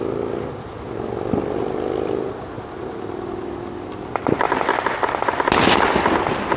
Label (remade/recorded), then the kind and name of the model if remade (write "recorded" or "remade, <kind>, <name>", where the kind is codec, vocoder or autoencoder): recorded